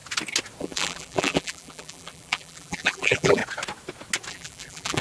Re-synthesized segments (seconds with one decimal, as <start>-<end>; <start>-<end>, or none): 0.6-3.4; 4.3-5.0